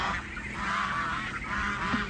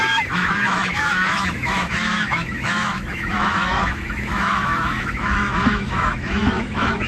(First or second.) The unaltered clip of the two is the first